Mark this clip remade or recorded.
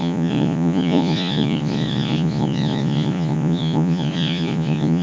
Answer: remade